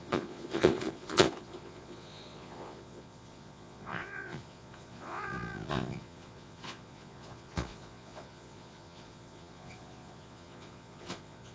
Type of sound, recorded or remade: remade